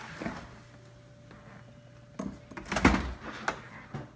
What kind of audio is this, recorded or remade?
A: recorded